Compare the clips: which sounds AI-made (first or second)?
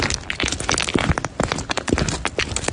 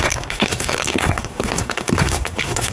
second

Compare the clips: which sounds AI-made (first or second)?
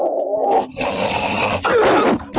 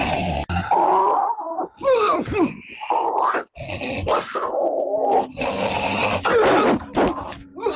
first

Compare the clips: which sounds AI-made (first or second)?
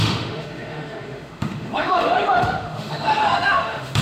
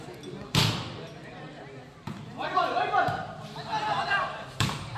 first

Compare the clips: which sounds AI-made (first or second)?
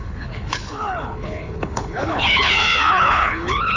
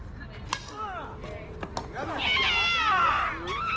first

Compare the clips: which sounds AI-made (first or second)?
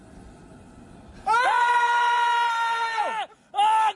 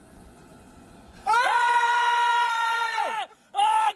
second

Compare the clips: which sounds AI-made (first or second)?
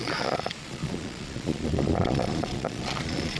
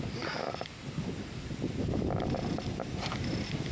first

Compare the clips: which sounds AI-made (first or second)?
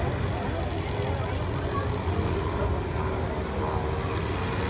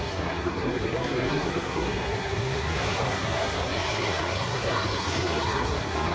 second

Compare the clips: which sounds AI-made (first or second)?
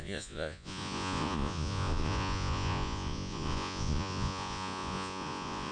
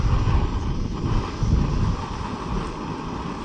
first